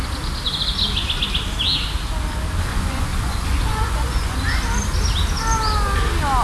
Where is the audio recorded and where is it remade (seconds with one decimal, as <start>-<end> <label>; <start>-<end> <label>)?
0.0-2.7 recorded; 2.7-4.4 remade; 4.4-6.4 recorded